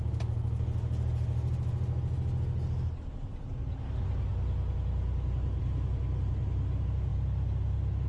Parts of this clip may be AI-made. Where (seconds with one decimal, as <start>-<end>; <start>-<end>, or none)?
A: none